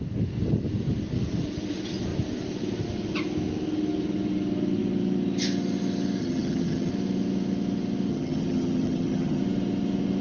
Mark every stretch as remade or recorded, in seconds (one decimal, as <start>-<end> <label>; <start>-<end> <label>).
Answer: 0.0-6.2 recorded; 6.2-6.9 remade; 6.9-8.1 recorded; 8.1-9.4 remade; 9.4-10.2 recorded